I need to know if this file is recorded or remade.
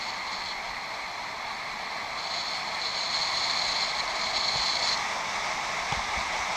recorded